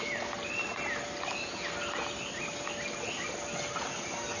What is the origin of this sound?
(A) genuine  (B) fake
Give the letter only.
A